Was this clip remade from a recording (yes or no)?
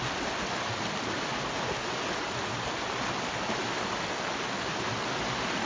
no